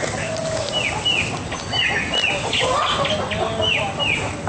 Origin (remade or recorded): recorded